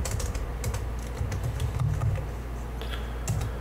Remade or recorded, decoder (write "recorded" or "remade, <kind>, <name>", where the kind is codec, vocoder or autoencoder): recorded